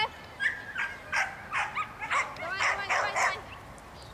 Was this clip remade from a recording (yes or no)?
no